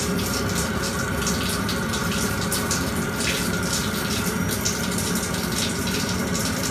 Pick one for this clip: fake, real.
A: real